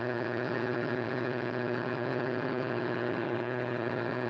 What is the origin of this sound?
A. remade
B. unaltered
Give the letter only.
A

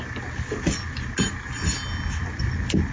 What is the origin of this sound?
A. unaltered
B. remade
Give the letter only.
A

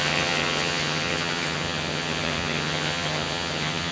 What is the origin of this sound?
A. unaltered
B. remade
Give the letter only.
B